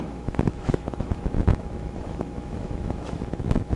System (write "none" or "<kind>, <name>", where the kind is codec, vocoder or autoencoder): autoencoder, DAC-VAE